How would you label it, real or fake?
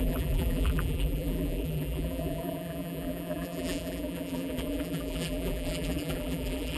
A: fake